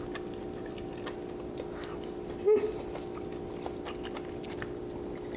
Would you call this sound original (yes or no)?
yes